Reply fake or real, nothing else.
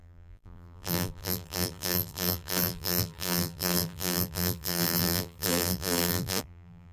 fake